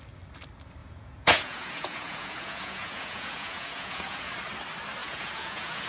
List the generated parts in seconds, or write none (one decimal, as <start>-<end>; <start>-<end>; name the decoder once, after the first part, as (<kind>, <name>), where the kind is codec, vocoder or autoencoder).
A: 0.8-4.3 (vocoder, Vocos); 5.0-5.9